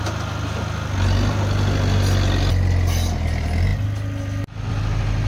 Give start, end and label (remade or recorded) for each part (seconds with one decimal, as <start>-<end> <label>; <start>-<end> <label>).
0.0-3.7 recorded; 3.7-4.7 remade; 4.7-5.3 recorded